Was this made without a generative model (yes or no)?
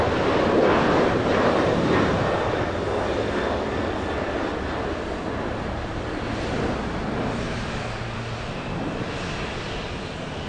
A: yes